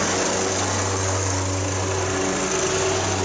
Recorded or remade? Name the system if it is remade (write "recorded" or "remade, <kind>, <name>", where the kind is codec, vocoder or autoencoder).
recorded